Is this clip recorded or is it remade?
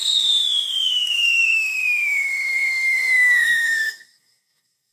remade